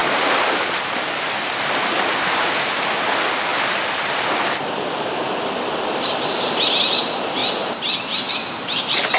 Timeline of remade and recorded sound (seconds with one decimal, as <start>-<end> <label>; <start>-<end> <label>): 0.0-9.2 recorded